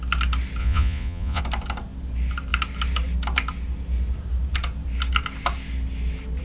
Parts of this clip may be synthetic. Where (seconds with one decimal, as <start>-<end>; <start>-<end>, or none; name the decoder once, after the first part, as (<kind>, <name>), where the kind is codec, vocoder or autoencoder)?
0.6-1.4 (vocoder, Vocos)